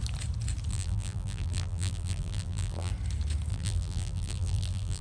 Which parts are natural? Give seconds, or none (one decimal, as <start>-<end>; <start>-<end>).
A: 0.0-0.7; 2.9-3.5